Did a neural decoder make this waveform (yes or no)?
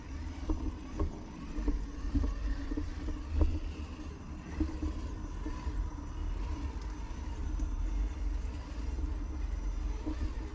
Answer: no